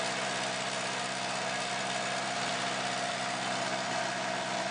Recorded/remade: recorded